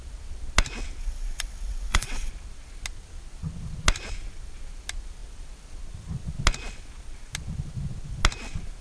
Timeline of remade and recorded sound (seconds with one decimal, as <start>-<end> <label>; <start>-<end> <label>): 0.0-1.0 recorded; 1.0-2.3 remade; 2.3-8.8 recorded